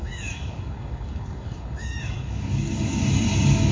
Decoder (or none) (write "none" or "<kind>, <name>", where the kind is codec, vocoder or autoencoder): codec, DAC